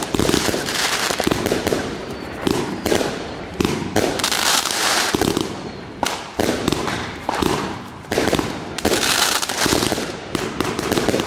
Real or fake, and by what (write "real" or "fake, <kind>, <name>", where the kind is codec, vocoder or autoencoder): fake, vocoder, BigVGAN v2